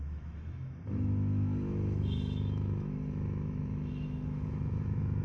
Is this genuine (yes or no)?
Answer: no